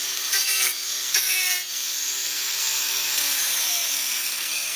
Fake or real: fake